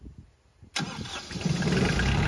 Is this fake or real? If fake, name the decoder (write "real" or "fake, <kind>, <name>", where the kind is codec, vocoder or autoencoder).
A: real